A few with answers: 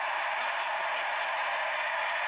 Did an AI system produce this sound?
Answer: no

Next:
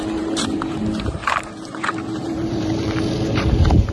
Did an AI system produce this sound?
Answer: yes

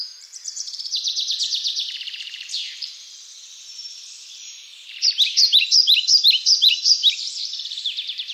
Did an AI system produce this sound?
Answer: yes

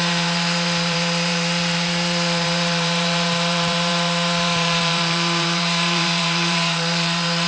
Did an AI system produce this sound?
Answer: yes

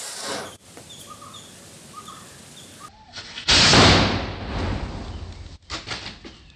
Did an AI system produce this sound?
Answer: no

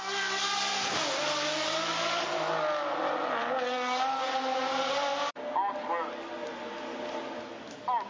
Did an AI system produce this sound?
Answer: no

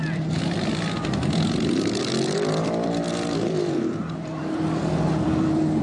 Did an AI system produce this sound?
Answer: yes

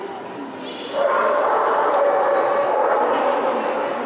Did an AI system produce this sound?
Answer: no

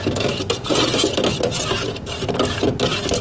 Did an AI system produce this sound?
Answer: no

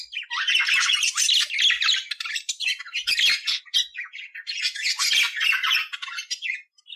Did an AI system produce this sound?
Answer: no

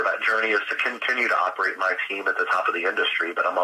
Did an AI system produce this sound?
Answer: no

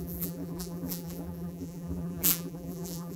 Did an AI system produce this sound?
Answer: yes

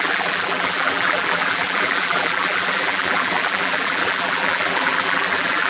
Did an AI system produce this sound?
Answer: yes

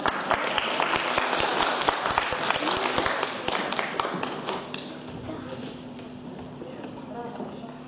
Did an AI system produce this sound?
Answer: no